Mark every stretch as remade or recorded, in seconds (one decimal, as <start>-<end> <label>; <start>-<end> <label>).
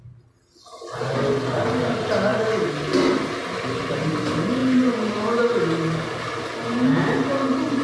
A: 0.0-7.8 recorded